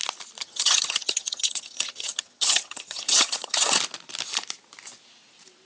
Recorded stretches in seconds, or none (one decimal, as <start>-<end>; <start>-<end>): 0.0-0.4; 3.8-5.7